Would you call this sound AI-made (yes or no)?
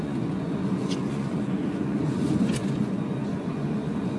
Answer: yes